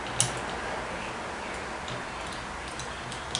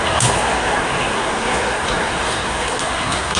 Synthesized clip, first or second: second